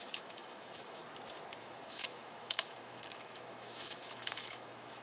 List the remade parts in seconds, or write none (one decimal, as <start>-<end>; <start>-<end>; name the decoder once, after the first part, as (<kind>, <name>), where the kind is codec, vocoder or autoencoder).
0.0-1.0 (autoencoder, DAC-VAE); 1.6-5.0